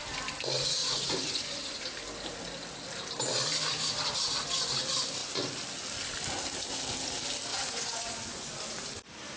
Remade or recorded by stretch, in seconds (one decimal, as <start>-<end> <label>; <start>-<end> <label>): 0.0-0.8 recorded; 0.8-1.8 remade; 1.8-7.5 recorded; 7.5-8.5 remade; 8.5-9.4 recorded